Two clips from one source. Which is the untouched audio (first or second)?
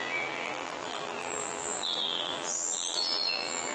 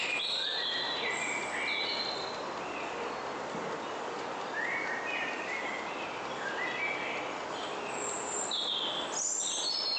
second